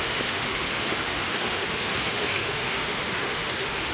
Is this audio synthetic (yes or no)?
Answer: yes